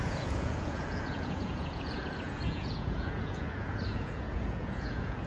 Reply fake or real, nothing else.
fake